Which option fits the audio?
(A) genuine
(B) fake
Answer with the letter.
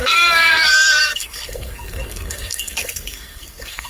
B